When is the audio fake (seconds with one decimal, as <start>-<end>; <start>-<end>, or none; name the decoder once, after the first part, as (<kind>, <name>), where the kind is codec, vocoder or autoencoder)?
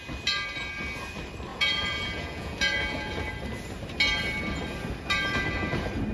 1.5-3.2 (vocoder, Vocos)